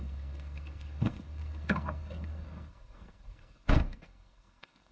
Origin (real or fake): fake